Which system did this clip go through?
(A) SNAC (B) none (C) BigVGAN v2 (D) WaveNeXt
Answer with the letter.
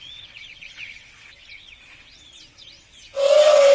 D